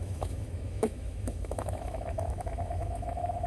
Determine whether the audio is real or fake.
fake